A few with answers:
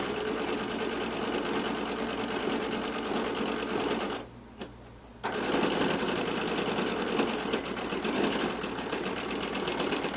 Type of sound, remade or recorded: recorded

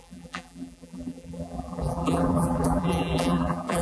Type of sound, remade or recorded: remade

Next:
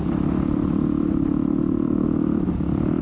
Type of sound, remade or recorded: remade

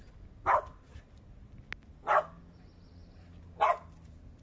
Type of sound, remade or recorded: recorded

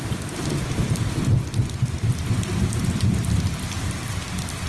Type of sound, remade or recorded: recorded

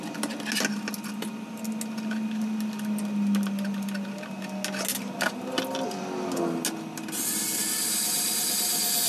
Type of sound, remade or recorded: recorded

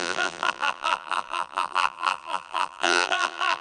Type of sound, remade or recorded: remade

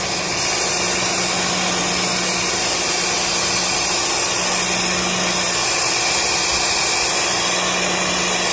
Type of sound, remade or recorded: recorded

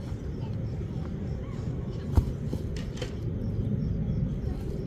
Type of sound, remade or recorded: recorded